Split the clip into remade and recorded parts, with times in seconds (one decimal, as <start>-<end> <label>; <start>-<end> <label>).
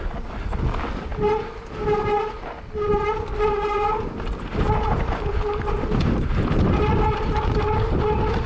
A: 0.0-8.5 recorded